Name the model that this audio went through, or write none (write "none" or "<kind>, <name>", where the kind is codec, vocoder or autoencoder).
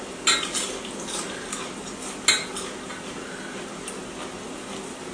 none